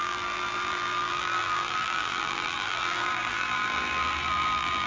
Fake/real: fake